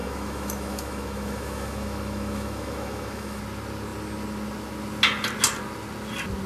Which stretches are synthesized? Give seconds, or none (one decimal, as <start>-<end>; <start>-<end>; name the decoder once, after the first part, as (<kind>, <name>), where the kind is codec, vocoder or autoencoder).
0.0-3.4 (autoencoder, DAC-VAE)